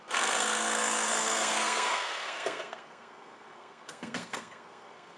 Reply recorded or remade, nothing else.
remade